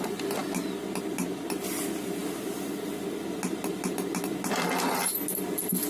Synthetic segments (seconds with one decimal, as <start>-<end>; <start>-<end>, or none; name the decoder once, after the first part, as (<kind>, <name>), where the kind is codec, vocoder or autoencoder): none